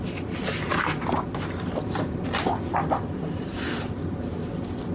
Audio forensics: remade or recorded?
recorded